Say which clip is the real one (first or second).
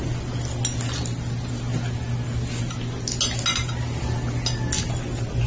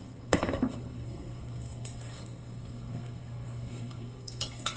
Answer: first